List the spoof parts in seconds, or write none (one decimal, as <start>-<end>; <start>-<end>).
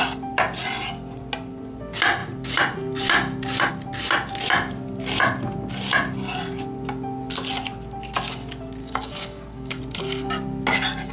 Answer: 8.8-9.8